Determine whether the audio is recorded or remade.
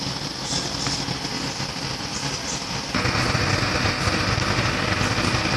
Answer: recorded